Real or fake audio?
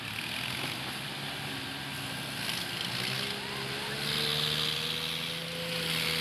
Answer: real